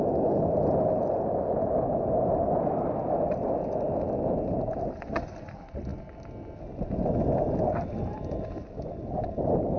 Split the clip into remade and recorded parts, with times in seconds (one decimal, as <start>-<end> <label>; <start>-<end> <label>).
0.0-9.8 recorded